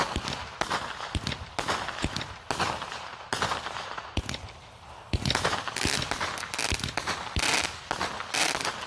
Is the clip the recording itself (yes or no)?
yes